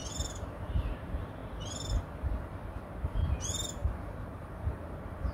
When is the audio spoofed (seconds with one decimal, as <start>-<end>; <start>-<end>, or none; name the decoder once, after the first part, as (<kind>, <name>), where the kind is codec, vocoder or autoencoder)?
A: 0.0-5.3 (vocoder, BigVGAN v2)